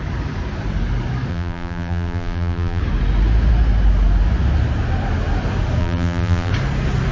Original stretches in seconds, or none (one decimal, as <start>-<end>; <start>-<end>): 0.0-1.3; 2.8-5.8; 6.5-7.1